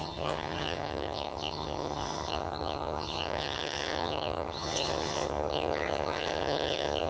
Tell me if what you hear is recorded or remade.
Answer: remade